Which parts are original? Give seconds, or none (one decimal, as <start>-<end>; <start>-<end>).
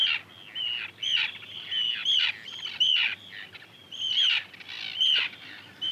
0.0-5.9